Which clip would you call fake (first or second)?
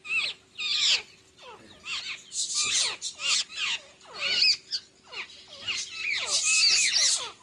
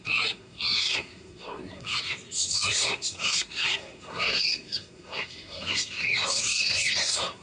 second